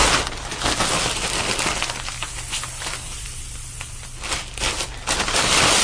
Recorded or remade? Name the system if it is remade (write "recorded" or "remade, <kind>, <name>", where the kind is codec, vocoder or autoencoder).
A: recorded